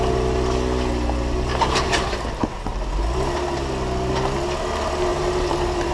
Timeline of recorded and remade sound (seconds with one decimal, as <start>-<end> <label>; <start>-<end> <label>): 0.0-1.5 recorded; 1.5-3.0 remade; 3.0-5.1 recorded; 5.1-5.9 remade